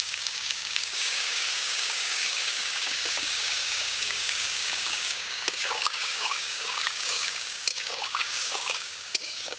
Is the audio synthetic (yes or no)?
yes